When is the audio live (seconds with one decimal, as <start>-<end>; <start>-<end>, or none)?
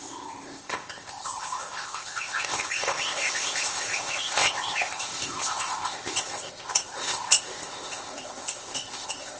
none